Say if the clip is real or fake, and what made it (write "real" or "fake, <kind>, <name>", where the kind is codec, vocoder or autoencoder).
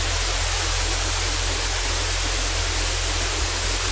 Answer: real